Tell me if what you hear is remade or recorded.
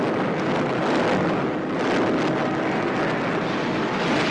recorded